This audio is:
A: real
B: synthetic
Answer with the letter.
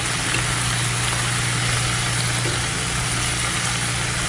A